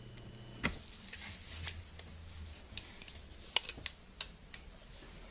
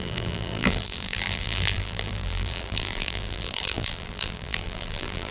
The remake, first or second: second